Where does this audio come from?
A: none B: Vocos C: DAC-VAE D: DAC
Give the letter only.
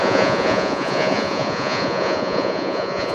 B